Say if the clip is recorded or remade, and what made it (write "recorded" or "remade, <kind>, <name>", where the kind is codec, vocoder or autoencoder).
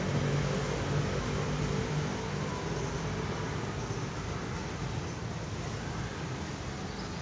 recorded